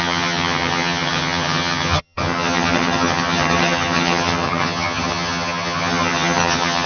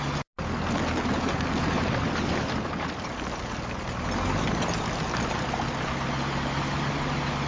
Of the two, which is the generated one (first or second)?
first